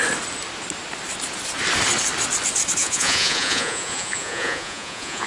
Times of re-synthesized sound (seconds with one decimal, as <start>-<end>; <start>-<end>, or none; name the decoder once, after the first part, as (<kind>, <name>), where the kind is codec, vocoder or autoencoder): 2.8-5.3 (vocoder, Vocos)